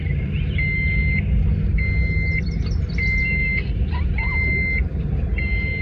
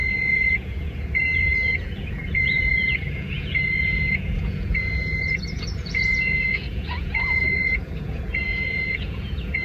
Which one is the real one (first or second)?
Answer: first